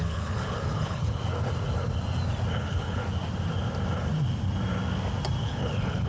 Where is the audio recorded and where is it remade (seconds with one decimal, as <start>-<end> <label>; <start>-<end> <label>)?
0.0-1.2 remade; 1.2-2.5 recorded; 2.5-3.0 remade; 3.0-5.4 recorded; 5.4-6.1 remade